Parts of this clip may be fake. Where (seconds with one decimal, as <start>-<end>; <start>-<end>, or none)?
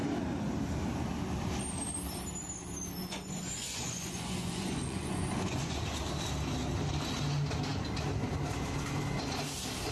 3.0-5.8